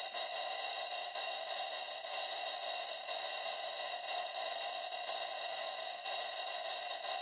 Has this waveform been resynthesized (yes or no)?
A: no